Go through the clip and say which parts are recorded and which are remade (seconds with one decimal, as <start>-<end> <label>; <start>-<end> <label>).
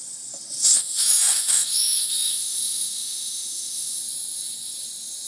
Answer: 0.0-0.8 recorded; 0.8-4.0 remade; 4.0-5.3 recorded